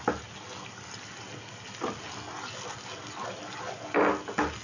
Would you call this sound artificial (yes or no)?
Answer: no